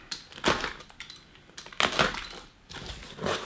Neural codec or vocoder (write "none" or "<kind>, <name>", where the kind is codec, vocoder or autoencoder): none